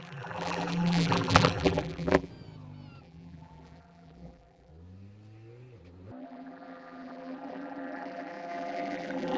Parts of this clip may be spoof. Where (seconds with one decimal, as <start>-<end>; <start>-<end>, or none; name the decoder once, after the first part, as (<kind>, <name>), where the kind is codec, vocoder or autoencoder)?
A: 0.0-2.3 (vocoder, BigVGAN v2); 3.0-4.7; 6.2-9.4